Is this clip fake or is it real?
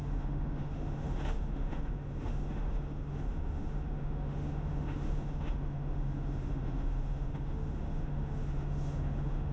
fake